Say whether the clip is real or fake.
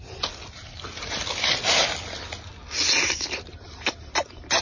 real